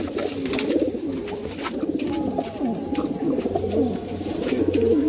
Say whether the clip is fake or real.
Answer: real